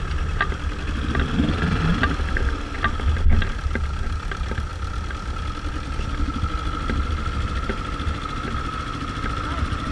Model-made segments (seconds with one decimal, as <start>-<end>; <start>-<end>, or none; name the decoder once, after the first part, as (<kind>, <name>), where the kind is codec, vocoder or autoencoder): none